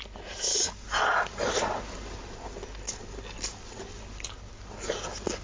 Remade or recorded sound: recorded